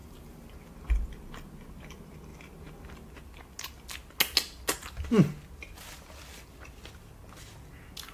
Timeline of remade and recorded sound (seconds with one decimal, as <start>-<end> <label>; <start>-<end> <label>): 0.0-0.5 remade; 0.5-8.1 recorded